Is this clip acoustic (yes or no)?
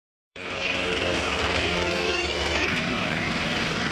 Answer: no